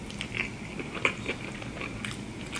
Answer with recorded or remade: recorded